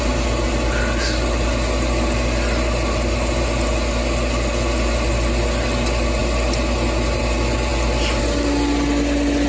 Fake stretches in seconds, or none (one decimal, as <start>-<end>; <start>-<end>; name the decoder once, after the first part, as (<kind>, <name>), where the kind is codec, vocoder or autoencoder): none